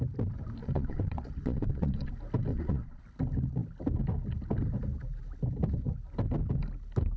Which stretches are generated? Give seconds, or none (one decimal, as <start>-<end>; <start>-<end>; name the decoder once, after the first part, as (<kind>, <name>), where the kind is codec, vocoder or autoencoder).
0.6-2.1 (vocoder, Vocos); 2.5-3.0